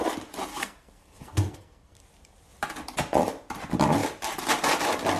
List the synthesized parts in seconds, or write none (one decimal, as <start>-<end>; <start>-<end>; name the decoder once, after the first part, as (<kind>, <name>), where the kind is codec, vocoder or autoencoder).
0.5-2.0 (codec, SNAC)